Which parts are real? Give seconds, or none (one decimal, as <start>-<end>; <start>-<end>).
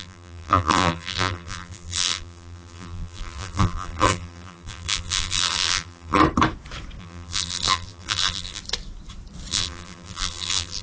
6.2-7.0; 8.6-9.5